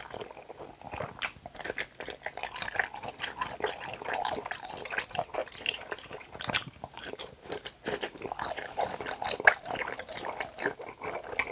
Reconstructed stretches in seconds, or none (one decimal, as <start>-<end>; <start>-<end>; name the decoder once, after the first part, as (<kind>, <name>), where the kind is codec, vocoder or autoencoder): 5.4-7.7 (vocoder, BigVGAN v2)